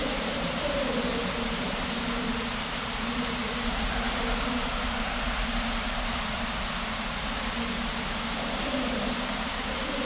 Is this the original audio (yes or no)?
no